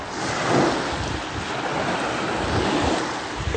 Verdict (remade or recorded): recorded